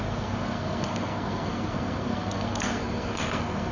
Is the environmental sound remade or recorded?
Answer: remade